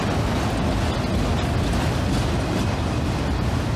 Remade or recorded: recorded